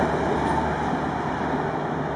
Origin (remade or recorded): recorded